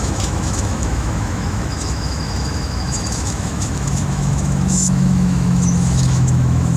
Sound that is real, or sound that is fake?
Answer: fake